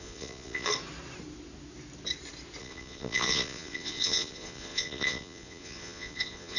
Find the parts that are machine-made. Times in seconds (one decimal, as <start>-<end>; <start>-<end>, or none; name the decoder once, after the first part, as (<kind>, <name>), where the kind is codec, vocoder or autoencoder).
0.0-0.7 (vocoder, Vocos); 2.6-6.6